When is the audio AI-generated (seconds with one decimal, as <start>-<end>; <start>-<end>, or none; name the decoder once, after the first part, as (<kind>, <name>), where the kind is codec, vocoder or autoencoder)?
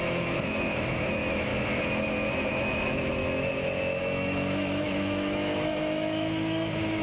0.0-1.5 (autoencoder, DAC-VAE); 2.5-3.2; 4.0-7.0